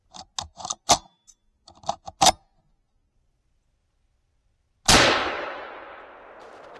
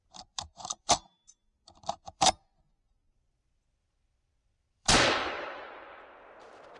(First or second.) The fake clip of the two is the second